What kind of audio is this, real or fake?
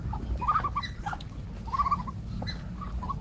real